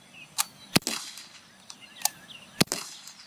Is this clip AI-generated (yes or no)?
no